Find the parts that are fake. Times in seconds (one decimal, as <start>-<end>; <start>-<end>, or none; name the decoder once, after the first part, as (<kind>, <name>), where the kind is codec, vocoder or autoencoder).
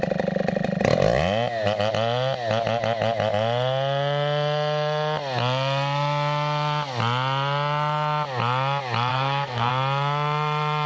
9.1-9.7 (codec, SNAC)